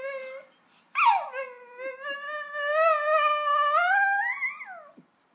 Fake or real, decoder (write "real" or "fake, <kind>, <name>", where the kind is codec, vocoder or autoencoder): real